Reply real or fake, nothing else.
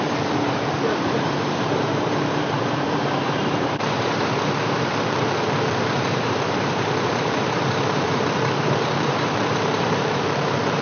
fake